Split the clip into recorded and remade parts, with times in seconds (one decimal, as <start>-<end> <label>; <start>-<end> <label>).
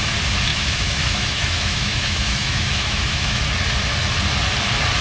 0.0-0.5 recorded; 0.5-3.4 remade; 3.4-5.0 recorded